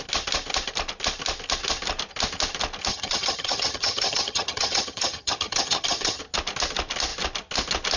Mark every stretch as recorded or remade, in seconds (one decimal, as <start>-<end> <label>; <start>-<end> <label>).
0.0-2.9 recorded; 2.9-6.2 remade; 6.2-8.0 recorded